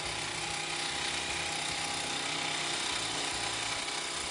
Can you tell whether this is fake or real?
real